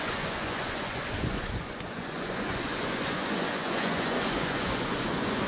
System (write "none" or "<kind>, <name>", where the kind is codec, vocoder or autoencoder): vocoder, Vocos